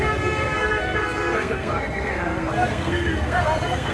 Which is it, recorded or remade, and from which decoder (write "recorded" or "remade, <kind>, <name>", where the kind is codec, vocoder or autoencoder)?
remade, codec, SNAC